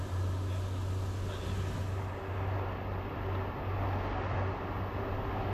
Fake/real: real